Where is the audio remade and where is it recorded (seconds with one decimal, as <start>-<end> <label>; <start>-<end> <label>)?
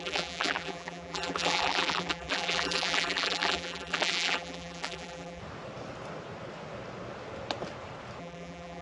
0.0-5.4 remade; 5.4-8.2 recorded; 8.2-8.8 remade